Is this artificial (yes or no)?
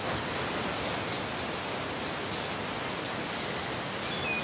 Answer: no